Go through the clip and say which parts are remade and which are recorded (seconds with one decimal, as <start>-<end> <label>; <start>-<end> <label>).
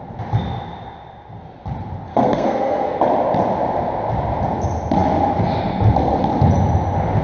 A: 0.0-2.1 recorded; 2.1-3.0 remade; 3.0-7.2 recorded